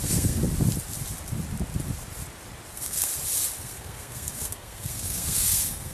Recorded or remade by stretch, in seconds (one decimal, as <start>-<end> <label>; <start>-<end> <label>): 0.0-0.4 remade; 0.4-2.7 recorded; 2.7-3.1 remade; 3.1-3.6 recorded; 3.6-5.9 remade